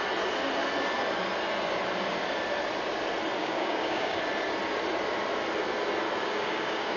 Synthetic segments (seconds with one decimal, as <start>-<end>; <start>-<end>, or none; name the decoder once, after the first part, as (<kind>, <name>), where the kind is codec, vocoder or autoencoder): 3.4-4.2 (codec, DAC); 6.2-7.0